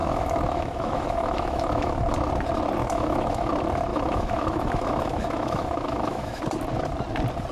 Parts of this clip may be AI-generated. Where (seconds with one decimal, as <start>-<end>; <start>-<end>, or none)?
0.0-2.1; 2.8-3.5; 3.9-6.4

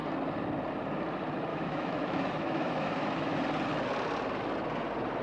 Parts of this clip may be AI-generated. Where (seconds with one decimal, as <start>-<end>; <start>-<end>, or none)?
1.5-3.4

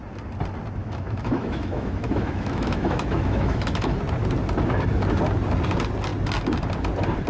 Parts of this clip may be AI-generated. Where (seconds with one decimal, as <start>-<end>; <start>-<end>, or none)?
0.8-4.0

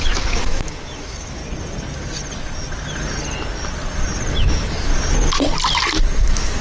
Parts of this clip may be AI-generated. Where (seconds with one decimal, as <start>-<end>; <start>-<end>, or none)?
0.0-1.4; 4.3-4.9; 6.0-6.6

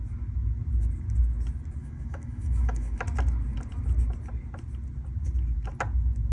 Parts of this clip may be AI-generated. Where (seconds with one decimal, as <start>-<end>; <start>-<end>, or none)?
1.8-3.0